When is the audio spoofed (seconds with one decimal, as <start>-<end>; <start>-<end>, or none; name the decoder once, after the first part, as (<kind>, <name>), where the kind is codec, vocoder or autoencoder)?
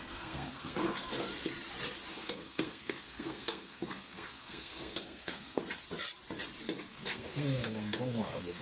0.0-1.3 (codec, SNAC); 2.1-5.6; 6.9-8.6